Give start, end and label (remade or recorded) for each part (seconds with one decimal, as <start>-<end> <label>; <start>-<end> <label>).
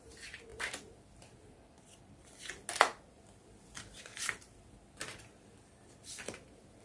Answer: 0.0-0.5 recorded; 0.5-2.4 remade; 2.4-2.9 recorded; 2.9-3.8 remade; 3.8-6.8 recorded